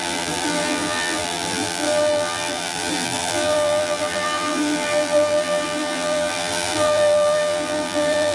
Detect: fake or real fake